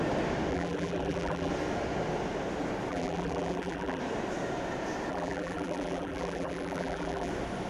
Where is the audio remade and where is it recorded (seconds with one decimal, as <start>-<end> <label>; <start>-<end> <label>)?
0.0-0.5 recorded; 0.5-1.5 remade; 1.5-2.9 recorded; 2.9-4.0 remade; 4.0-5.1 recorded; 5.1-7.3 remade; 7.3-7.7 recorded